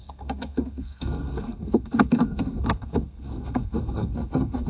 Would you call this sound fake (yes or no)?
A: yes